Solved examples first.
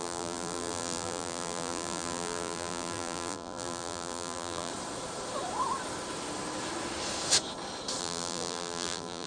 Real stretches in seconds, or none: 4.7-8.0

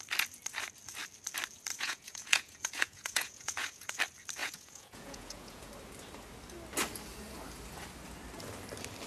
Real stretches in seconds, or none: 0.0-1.7; 4.0-4.4; 5.7-9.1

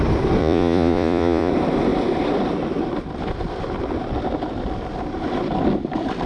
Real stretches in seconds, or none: 0.0-0.4; 1.5-6.3

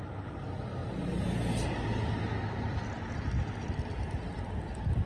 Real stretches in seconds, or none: 0.0-5.1

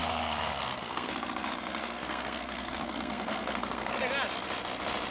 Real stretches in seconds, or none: 1.1-1.8; 4.0-5.1

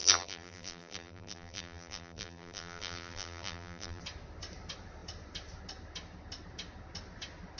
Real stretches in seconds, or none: 4.0-7.6

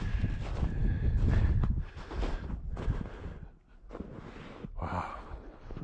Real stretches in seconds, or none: 0.0-5.1